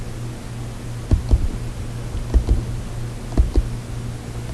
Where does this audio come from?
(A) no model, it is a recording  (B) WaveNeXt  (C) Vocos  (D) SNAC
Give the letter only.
A